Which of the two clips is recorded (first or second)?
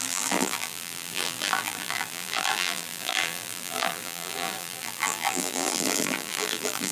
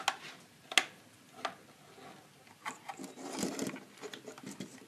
second